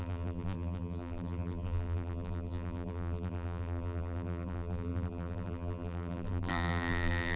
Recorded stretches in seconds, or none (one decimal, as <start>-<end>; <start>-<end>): none